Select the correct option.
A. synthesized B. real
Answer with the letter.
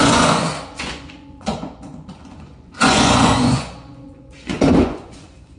A